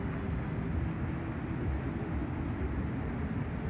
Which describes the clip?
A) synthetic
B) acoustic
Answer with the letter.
B